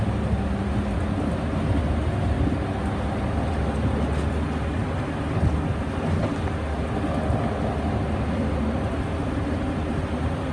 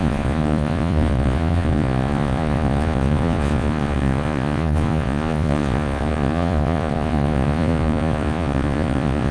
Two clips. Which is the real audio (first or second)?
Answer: first